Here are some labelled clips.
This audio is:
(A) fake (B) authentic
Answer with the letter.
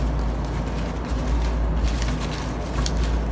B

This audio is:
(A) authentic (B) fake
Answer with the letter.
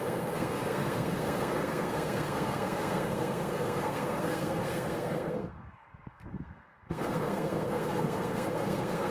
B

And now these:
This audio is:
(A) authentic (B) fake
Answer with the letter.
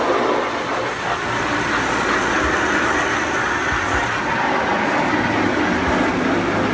A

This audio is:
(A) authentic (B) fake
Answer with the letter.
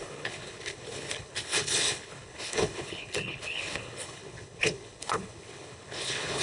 B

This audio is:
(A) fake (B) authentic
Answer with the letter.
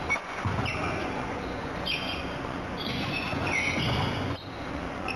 A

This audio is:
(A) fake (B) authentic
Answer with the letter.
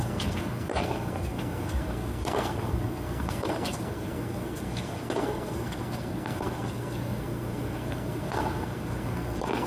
A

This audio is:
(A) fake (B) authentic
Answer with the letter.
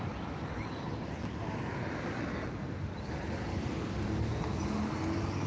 B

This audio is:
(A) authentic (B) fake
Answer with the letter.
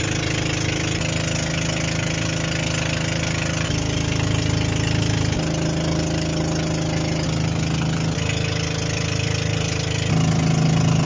A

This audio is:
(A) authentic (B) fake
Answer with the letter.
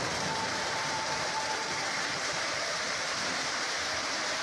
B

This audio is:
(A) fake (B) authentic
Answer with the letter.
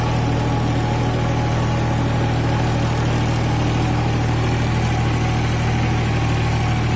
B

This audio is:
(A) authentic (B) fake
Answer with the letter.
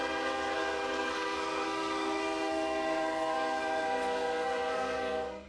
B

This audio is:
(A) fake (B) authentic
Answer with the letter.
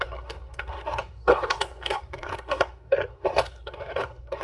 A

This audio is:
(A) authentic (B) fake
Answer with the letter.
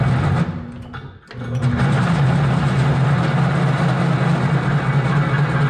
A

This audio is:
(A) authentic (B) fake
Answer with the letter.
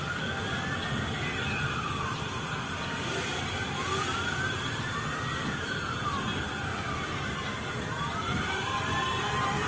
A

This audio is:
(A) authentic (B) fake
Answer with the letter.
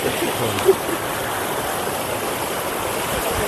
A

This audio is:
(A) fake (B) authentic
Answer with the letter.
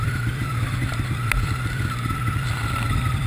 A